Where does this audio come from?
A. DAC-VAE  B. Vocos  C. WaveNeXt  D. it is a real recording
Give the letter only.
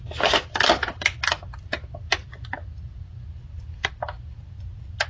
D